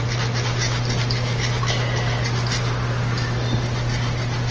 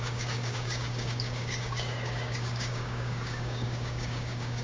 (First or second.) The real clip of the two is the first